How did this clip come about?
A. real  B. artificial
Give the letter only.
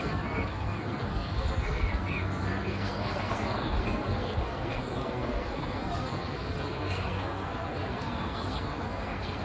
B